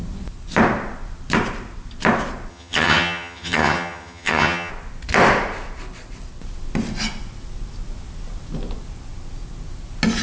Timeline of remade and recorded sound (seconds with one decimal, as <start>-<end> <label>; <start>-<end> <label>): 0.0-2.5 recorded; 2.5-4.7 remade; 4.7-10.2 recorded